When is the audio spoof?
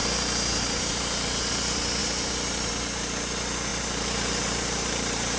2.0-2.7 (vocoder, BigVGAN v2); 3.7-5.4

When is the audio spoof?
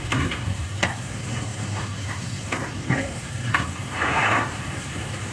0.0-5.3 (codec, SNAC)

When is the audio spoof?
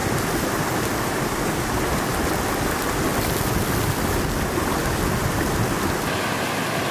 none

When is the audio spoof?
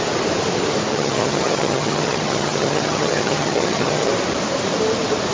0.9-4.1 (vocoder, HiFi-GAN)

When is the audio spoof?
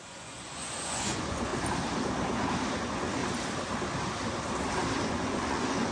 0.0-1.5 (vocoder, Vocos); 2.8-3.2; 5.1-5.9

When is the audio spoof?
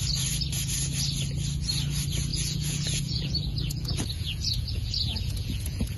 2.3-6.0 (vocoder, Vocos)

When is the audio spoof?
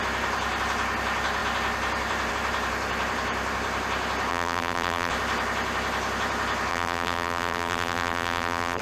4.3-5.1 (vocoder, BigVGAN v2); 6.7-8.8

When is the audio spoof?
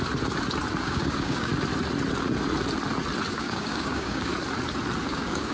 0.8-1.5 (codec, DAC); 3.3-4.3; 5.0-5.5